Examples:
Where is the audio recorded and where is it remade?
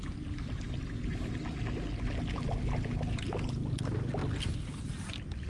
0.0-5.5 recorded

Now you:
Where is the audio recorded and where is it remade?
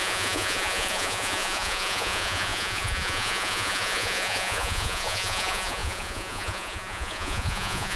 0.0-8.0 remade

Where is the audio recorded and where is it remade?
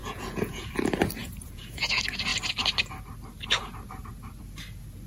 0.0-0.7 remade; 0.7-1.2 recorded; 1.2-1.9 remade; 1.9-5.1 recorded